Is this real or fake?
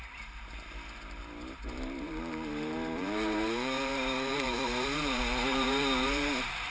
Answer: fake